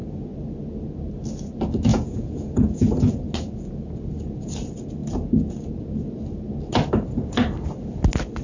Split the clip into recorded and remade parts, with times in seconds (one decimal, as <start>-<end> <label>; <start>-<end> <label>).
0.0-1.9 recorded; 1.9-3.0 remade; 3.0-8.4 recorded